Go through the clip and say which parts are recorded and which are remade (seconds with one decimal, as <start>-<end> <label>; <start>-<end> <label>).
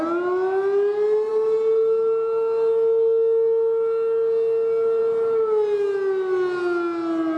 0.0-7.4 recorded